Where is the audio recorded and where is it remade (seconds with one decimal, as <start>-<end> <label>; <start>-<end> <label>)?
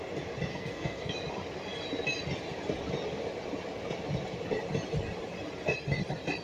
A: 0.0-0.5 recorded; 0.5-1.1 remade; 1.1-6.4 recorded